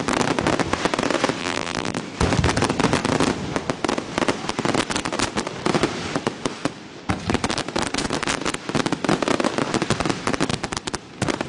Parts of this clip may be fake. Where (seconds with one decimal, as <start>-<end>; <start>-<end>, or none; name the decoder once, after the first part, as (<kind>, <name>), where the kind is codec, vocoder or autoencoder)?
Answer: 1.4-2.0 (vocoder, BigVGAN v2)